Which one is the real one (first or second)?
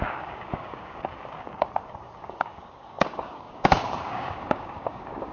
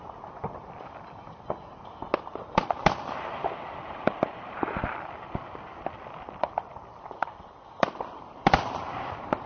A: second